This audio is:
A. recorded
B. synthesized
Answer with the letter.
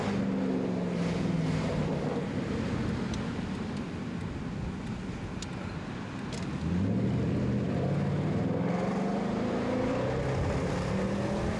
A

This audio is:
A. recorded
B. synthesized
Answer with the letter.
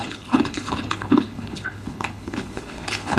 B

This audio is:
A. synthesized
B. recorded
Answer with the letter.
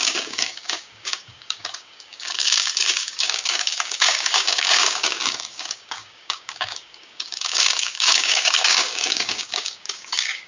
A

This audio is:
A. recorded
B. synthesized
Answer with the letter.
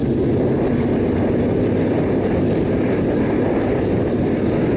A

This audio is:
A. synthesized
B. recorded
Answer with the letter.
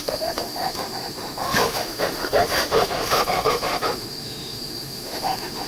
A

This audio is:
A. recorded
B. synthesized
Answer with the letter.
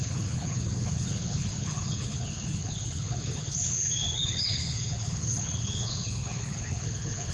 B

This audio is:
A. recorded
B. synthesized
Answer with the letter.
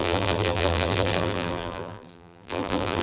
B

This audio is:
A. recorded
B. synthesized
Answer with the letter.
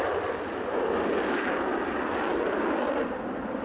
A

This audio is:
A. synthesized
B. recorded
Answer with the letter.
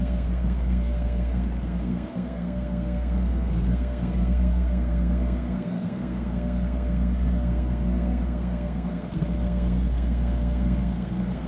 A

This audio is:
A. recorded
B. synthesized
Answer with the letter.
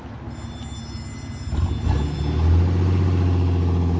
A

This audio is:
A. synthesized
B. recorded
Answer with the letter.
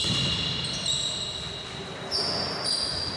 B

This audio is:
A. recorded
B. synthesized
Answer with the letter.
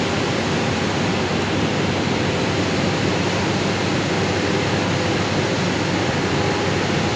A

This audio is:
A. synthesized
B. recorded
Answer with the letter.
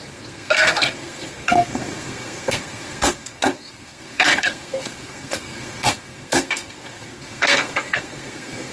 A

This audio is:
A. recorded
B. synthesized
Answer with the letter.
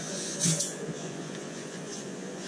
B